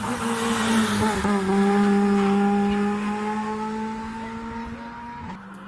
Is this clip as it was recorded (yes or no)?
yes